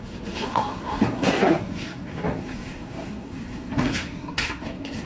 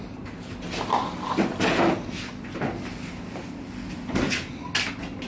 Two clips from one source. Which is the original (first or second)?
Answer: second